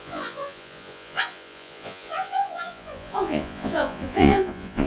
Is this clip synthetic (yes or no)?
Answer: yes